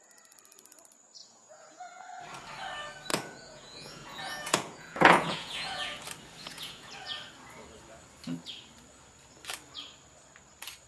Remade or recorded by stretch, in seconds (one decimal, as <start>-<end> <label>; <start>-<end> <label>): 0.0-1.2 recorded; 1.2-2.0 remade; 2.0-3.1 recorded; 3.1-6.0 remade; 6.0-6.4 recorded; 6.4-6.9 remade; 6.9-10.9 recorded